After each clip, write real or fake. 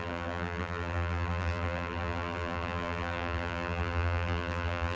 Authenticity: fake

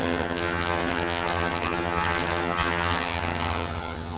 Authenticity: fake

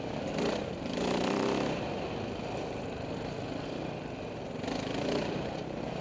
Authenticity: real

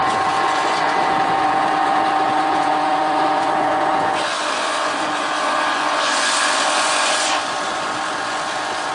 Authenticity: fake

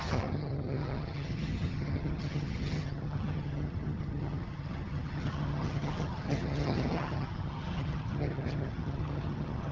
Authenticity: fake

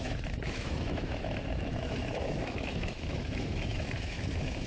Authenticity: fake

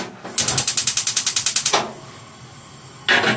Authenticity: real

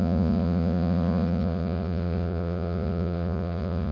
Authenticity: fake